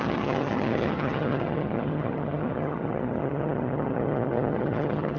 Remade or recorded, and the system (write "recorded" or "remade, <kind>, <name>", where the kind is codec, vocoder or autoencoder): remade, vocoder, HiFi-GAN